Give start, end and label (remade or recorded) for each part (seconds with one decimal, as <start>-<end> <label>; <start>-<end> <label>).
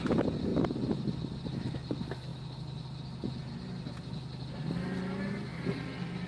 0.0-6.3 recorded